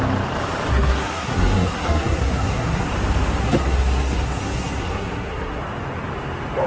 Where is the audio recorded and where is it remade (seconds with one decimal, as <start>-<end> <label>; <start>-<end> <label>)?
0.0-0.7 recorded; 0.7-2.9 remade; 2.9-3.4 recorded; 3.4-5.6 remade; 5.6-6.7 recorded